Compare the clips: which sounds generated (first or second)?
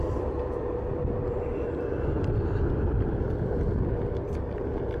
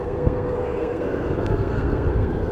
second